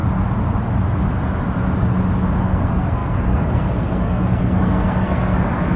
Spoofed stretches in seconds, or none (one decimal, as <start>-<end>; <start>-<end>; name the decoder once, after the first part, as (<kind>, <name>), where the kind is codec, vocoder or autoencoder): 2.4-5.8 (codec, SNAC)